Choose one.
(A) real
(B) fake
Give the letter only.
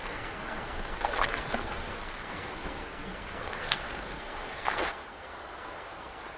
B